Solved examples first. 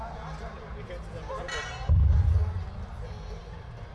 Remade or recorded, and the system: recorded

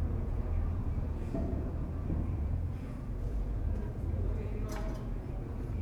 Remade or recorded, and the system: remade, vocoder, Vocos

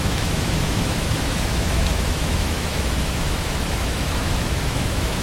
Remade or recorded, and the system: remade, autoencoder, DAC-VAE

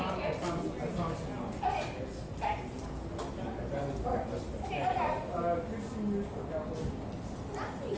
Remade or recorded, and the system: recorded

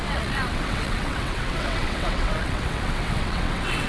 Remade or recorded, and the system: remade, vocoder, WaveNeXt